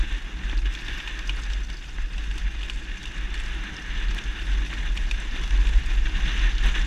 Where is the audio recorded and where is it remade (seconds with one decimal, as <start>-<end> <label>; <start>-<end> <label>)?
0.0-6.9 recorded